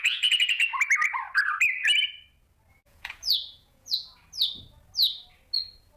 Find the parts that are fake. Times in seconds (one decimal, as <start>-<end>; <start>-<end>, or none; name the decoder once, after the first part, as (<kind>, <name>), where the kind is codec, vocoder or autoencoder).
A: 0.0-0.7 (vocoder, Vocos); 2.7-4.1